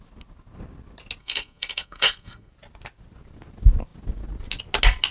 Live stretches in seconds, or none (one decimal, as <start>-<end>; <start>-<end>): 0.0-1.2; 2.5-5.1